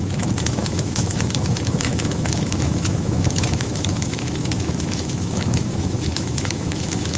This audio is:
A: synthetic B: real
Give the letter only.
A